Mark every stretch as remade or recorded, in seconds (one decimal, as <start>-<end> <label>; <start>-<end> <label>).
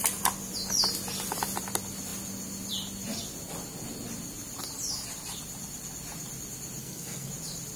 0.0-6.8 recorded; 6.8-7.3 remade; 7.3-7.8 recorded